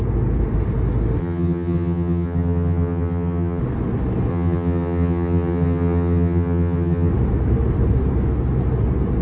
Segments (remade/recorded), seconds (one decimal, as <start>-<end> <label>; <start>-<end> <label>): 0.0-1.2 recorded; 1.2-3.6 remade; 3.6-4.3 recorded; 4.3-7.1 remade; 7.1-9.2 recorded